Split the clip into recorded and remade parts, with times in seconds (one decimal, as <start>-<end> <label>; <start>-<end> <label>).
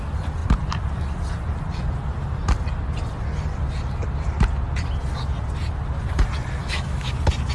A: 0.0-6.6 recorded; 6.6-7.1 remade; 7.1-7.5 recorded